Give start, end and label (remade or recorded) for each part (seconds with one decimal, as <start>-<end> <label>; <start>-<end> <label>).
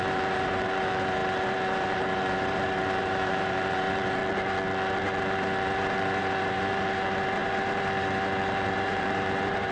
0.0-4.2 remade; 4.2-5.2 recorded; 5.2-9.7 remade